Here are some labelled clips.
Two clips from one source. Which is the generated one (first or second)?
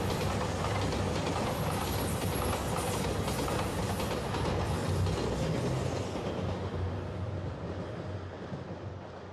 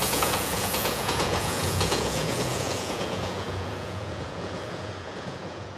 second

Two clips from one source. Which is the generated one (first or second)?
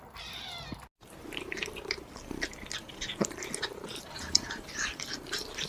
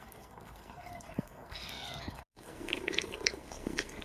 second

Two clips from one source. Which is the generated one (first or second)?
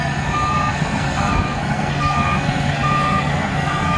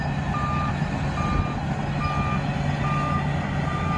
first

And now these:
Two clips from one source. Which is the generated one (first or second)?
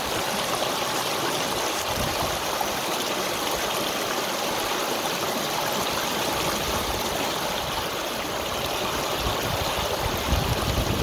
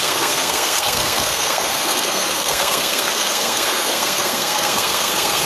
second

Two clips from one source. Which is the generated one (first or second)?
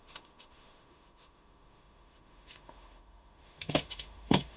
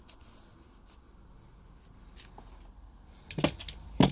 first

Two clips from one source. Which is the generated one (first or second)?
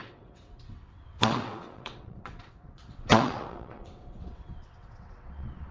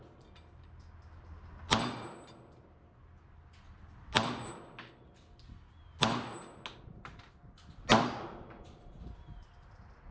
first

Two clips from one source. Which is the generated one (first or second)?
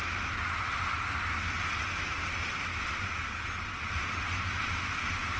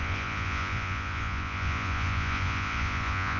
second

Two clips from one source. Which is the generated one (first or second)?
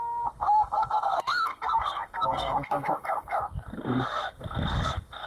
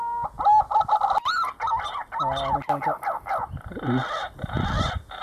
first